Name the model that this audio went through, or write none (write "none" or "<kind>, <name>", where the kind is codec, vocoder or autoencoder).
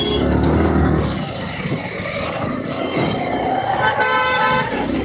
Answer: codec, DAC